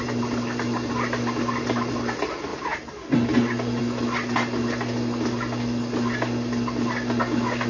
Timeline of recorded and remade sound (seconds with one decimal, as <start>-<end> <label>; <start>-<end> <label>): 0.0-7.7 recorded